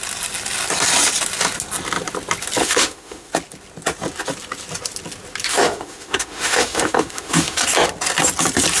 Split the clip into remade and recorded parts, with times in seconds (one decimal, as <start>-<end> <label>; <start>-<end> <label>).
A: 0.0-2.6 recorded; 2.6-3.3 remade; 3.3-5.5 recorded; 5.5-7.6 remade; 7.6-8.8 recorded